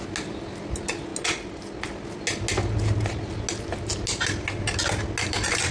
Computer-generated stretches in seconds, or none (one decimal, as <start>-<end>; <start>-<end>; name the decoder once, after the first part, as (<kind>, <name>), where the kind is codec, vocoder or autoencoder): none